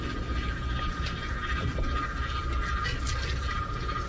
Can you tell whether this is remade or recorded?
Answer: recorded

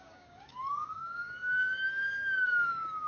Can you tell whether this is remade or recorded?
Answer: remade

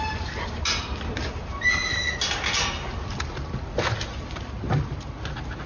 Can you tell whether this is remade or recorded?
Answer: recorded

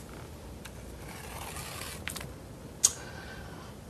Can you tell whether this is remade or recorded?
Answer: recorded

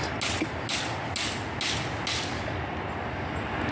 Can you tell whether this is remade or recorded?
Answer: recorded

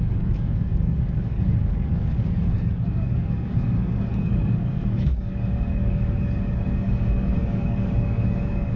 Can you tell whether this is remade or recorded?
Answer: remade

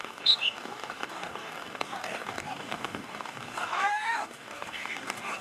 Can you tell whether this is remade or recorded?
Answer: remade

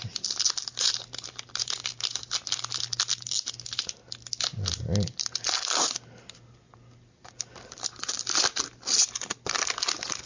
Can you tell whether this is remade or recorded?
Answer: recorded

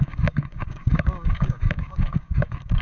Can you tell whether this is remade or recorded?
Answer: remade